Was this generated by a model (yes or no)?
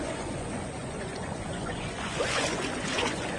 yes